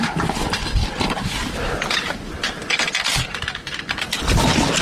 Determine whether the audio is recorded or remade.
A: recorded